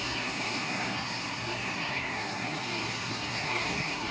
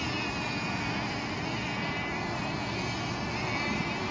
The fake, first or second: first